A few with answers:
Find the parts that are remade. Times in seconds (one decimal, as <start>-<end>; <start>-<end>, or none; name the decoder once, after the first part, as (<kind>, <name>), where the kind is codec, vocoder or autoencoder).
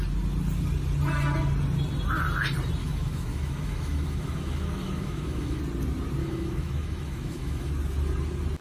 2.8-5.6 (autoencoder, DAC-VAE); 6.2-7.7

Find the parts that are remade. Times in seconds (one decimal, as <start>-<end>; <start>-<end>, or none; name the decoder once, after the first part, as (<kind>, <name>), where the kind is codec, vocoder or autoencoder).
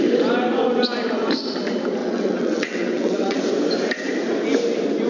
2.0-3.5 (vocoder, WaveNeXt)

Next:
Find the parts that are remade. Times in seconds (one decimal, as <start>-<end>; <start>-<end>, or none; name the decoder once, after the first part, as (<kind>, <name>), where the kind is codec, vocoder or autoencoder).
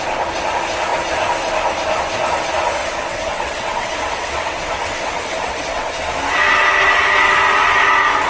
2.8-5.9 (vocoder, WaveNeXt)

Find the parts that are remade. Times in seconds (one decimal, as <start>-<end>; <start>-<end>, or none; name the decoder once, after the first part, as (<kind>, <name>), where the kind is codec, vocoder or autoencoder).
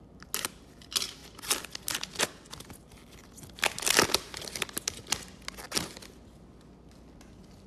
none